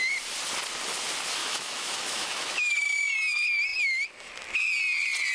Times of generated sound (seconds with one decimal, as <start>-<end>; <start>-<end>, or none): 1.4-2.7